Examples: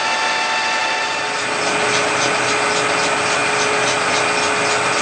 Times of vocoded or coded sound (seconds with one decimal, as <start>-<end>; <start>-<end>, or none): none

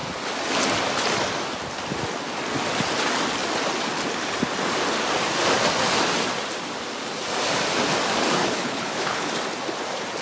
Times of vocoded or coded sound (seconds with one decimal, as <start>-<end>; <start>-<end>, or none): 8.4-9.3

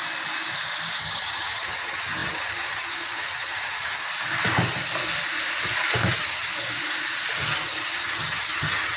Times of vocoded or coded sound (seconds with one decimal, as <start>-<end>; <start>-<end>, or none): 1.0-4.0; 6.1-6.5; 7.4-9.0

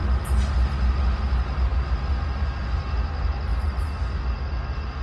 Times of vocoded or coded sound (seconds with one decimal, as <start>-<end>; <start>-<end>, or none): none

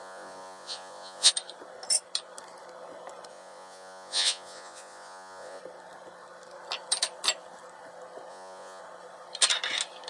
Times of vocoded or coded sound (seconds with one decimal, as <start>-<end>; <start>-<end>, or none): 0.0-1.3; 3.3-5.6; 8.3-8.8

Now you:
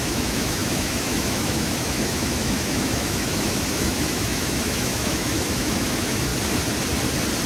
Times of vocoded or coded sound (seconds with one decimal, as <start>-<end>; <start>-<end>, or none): 0.0-6.3